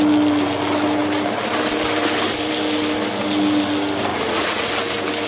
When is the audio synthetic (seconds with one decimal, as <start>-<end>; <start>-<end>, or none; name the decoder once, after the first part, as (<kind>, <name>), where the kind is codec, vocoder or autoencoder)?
4.1-4.7 (vocoder, Vocos)